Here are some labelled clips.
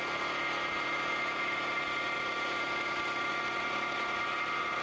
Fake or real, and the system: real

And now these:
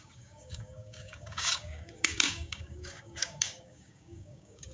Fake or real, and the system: fake, codec, DAC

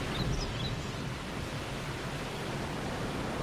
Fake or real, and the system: real